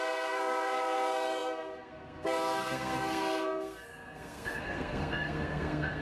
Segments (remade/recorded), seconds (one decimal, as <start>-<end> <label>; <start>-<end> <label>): 0.0-6.0 remade